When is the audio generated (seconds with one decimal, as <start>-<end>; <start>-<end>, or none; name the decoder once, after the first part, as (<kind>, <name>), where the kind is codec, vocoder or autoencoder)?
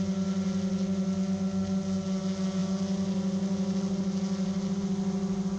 none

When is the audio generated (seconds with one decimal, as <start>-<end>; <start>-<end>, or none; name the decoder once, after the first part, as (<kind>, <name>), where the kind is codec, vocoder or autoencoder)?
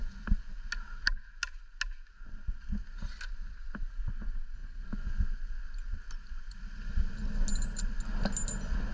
none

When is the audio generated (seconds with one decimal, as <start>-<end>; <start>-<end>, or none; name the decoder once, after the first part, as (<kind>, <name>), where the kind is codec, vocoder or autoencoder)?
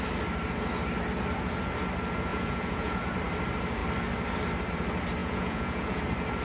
2.3-3.0 (vocoder, Vocos); 5.2-6.0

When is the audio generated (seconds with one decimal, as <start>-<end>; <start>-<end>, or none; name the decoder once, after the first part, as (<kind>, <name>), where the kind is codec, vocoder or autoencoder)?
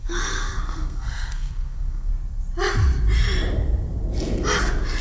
0.0-2.1 (codec, SNAC)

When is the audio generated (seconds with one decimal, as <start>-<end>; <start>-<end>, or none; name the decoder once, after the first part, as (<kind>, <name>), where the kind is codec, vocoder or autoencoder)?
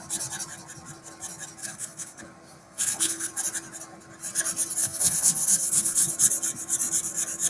1.6-2.2 (codec, SNAC); 2.6-3.3; 4.8-6.1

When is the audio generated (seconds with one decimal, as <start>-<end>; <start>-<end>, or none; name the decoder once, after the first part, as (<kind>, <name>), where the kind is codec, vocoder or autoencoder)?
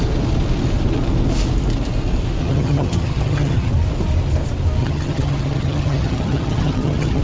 2.4-3.7 (vocoder, HiFi-GAN); 4.8-7.2